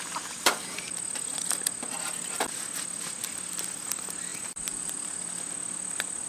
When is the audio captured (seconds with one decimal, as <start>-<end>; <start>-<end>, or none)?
0.0-4.3; 4.9-6.3